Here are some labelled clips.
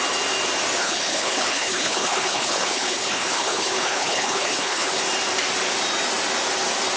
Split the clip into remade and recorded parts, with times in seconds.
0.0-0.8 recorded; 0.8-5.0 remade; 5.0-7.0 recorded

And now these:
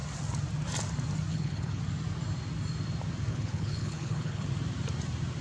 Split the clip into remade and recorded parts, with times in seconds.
0.0-1.3 recorded; 1.3-1.8 remade; 1.8-3.3 recorded; 3.3-4.5 remade; 4.5-5.4 recorded

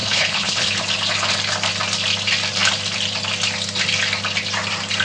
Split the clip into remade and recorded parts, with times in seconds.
0.0-0.7 remade; 0.7-5.0 recorded